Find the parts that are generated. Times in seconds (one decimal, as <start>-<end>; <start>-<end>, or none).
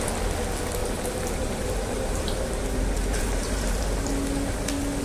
0.8-3.8